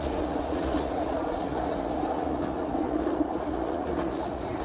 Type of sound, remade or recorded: remade